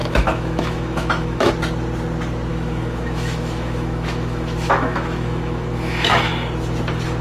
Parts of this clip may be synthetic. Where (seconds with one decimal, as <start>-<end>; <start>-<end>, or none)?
0.0-1.5; 2.5-6.3